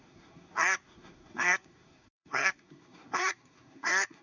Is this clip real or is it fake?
fake